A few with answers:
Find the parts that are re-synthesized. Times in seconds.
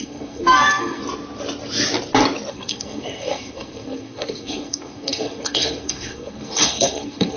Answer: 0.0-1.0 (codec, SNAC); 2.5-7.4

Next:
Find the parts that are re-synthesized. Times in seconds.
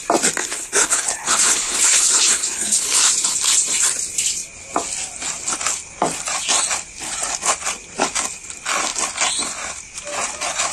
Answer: 0.4-3.1 (codec, HILCodec)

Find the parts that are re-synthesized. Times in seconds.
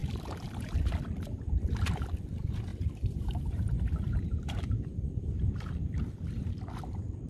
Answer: 0.0-0.9 (vocoder, BigVGAN v2); 2.7-5.7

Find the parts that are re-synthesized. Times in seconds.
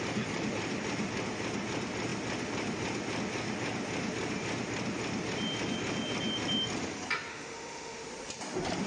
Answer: 7.3-8.1 (autoencoder, DAC-VAE)